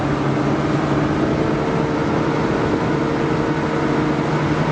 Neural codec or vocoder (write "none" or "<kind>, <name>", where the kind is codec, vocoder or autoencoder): none